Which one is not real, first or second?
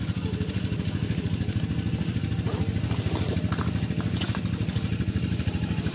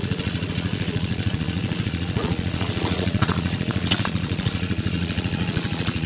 second